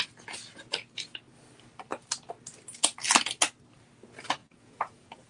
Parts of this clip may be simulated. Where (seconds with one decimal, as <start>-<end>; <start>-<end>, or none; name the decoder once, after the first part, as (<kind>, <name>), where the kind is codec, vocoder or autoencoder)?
4.4-5.3 (vocoder, Vocos)